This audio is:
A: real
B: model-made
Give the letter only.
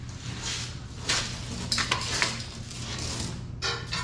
A